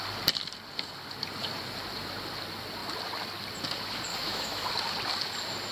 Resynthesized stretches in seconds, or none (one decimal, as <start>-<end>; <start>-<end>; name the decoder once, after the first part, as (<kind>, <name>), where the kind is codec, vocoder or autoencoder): 4.1-4.7 (autoencoder, DAC-VAE)